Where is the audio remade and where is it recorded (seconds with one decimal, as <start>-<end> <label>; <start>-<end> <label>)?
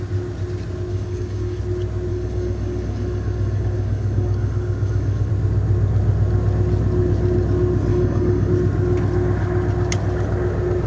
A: 0.0-0.9 recorded; 0.9-1.6 remade; 1.6-2.1 recorded; 2.1-5.3 remade; 5.3-7.9 recorded; 7.9-8.5 remade; 8.5-10.9 recorded